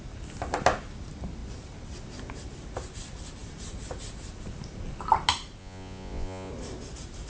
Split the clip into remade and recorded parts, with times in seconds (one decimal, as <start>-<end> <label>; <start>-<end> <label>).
0.0-5.6 recorded; 5.6-6.5 remade; 6.5-7.3 recorded